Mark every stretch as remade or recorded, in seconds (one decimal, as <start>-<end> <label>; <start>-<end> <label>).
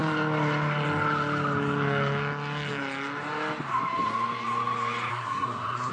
0.0-5.1 recorded; 5.1-5.9 remade